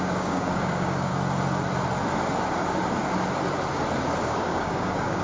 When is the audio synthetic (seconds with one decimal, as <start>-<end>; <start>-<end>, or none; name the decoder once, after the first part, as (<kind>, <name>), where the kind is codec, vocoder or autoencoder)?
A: 0.0-1.1 (codec, DAC); 4.2-5.2